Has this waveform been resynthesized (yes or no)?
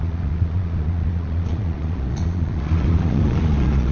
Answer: yes